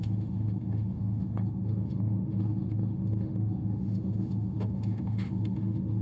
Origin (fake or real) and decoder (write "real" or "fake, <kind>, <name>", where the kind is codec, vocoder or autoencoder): fake, autoencoder, DAC-VAE